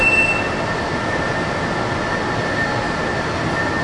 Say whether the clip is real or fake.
real